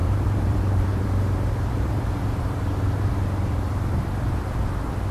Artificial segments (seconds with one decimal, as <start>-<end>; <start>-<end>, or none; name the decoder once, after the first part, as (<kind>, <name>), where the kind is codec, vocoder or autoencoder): 0.0-3.1 (vocoder, BigVGAN v2)